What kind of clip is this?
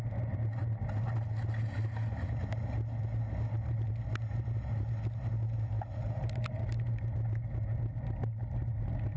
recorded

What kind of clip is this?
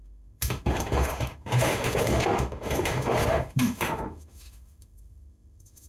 remade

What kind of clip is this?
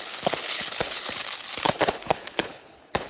remade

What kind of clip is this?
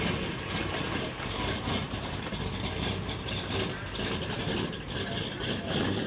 remade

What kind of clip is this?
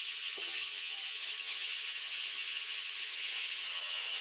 remade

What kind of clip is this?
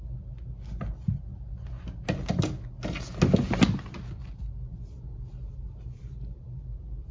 recorded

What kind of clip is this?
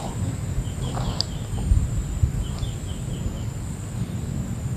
recorded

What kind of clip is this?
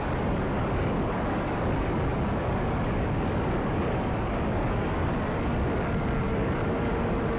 remade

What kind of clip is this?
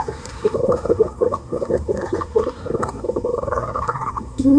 remade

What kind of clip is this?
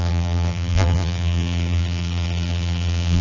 remade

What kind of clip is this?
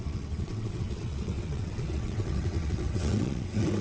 remade